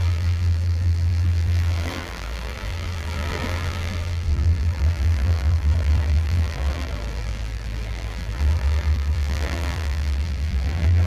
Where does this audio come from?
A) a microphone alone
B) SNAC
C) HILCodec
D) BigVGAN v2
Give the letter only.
D